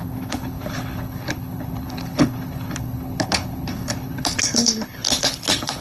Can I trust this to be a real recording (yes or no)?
no